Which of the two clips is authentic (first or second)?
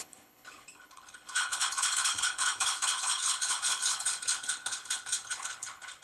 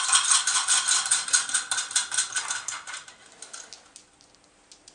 second